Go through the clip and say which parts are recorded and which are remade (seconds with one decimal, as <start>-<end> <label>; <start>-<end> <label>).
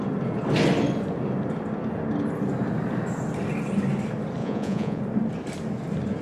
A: 0.0-4.4 recorded; 4.4-5.0 remade; 5.0-6.2 recorded